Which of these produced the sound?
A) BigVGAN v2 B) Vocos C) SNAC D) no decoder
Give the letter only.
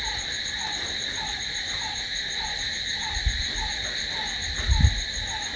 D